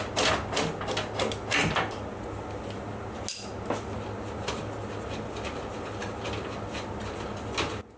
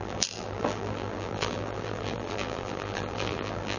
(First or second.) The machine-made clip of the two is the second